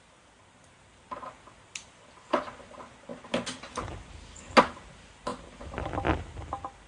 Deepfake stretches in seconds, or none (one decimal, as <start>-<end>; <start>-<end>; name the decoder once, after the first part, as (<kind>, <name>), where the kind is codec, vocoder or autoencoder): none